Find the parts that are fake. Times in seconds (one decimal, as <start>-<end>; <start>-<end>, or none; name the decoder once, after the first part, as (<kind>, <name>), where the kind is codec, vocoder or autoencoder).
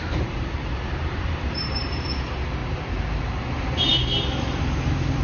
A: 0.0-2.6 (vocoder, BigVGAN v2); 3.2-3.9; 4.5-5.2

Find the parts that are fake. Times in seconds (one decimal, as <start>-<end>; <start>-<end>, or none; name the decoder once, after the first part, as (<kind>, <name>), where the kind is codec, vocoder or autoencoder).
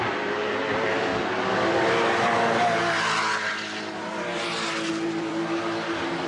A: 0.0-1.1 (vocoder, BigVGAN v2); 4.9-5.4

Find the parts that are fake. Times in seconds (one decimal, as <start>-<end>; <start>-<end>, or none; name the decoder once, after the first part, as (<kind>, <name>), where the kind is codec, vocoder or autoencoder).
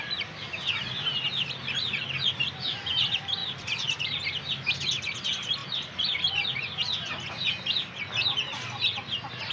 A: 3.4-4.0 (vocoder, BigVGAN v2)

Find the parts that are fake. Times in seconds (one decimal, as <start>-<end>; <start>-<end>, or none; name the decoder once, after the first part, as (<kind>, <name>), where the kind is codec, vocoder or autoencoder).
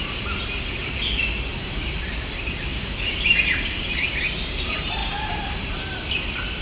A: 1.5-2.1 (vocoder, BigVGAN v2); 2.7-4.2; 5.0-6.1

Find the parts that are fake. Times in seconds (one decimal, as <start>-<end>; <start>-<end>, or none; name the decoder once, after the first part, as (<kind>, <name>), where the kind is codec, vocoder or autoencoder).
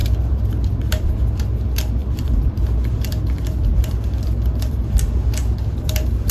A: 0.0-1.1 (vocoder, BigVGAN v2); 2.0-4.9; 5.4-6.3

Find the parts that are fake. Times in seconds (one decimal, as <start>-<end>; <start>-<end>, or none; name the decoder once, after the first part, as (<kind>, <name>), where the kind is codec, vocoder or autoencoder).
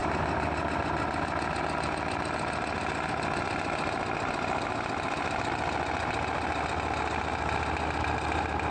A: 0.0-1.6 (vocoder, BigVGAN v2)